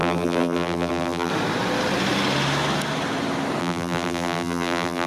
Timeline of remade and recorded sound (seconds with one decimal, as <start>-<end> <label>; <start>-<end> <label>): 0.0-1.3 remade; 1.3-3.6 recorded; 3.6-5.1 remade